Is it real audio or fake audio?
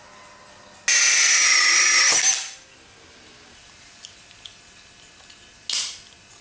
real